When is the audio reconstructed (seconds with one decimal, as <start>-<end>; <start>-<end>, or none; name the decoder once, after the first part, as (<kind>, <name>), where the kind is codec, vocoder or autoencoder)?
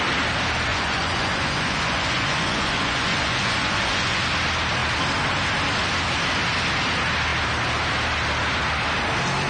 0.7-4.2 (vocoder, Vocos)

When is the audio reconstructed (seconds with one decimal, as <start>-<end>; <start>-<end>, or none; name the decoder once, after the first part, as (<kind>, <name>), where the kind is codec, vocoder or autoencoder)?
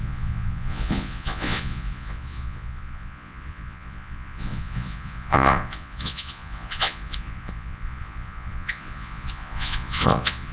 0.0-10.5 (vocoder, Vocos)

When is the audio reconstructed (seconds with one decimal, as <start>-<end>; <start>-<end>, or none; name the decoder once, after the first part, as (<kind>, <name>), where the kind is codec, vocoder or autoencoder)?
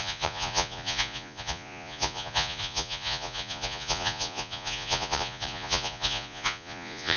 0.0-7.2 (vocoder, Vocos)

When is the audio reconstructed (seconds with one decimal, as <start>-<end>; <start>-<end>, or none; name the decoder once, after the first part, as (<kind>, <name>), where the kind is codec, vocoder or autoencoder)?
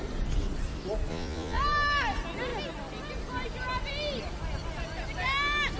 1.1-1.6 (vocoder, Vocos)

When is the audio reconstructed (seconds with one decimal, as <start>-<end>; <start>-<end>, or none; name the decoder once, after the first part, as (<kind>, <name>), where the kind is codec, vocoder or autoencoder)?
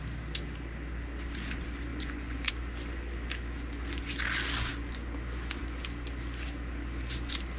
1.9-2.5 (vocoder, Vocos)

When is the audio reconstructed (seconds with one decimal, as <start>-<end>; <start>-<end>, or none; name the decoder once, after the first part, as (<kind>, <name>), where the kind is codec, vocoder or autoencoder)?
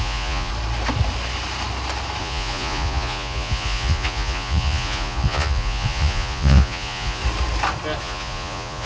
0.0-0.5 (vocoder, Vocos); 2.2-7.2; 8.0-8.9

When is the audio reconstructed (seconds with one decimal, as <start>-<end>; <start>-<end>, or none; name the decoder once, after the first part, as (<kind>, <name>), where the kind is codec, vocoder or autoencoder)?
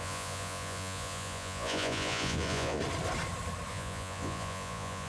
0.0-2.8 (vocoder, Vocos); 3.7-5.1